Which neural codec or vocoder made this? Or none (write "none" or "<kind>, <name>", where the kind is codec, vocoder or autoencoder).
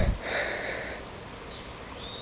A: none